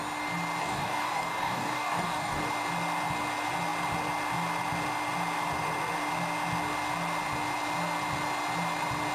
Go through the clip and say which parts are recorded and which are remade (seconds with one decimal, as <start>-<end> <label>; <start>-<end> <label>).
0.0-0.6 recorded; 0.6-2.4 remade; 2.4-9.1 recorded